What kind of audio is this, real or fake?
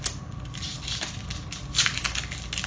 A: real